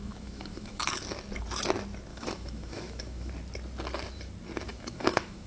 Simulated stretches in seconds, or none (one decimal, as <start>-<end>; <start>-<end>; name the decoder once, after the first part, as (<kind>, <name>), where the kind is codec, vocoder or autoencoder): 0.0-0.9 (autoencoder, DAC-VAE); 2.1-3.3; 4.7-5.5